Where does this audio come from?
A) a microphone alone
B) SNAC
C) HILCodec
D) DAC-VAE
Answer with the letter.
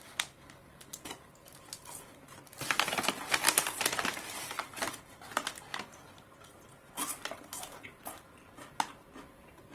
A